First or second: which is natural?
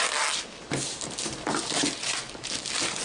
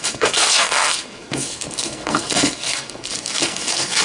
first